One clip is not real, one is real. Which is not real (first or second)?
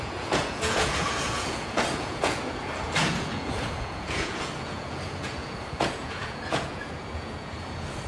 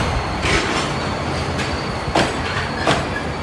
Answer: first